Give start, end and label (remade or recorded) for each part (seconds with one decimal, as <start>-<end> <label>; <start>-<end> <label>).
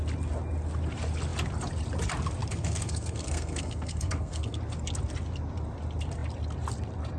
0.0-2.5 recorded; 2.5-4.6 remade; 4.6-7.2 recorded